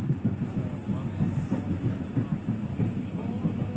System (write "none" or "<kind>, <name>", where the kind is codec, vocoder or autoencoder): none